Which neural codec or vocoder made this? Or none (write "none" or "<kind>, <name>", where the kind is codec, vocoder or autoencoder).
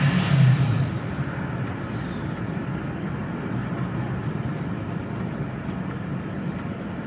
none